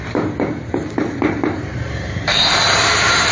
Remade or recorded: remade